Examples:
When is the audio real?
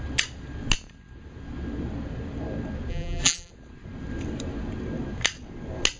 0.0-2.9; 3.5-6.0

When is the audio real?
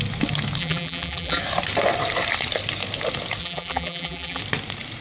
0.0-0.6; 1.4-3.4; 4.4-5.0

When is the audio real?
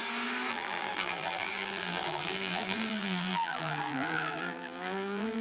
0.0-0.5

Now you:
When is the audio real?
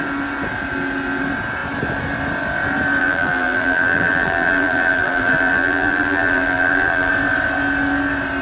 0.0-3.0; 7.1-8.4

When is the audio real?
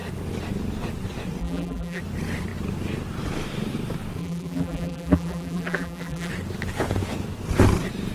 0.0-1.4; 2.0-4.2; 6.3-8.1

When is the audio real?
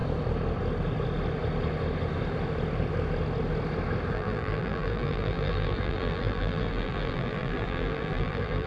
0.0-4.1